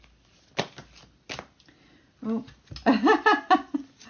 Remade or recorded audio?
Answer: recorded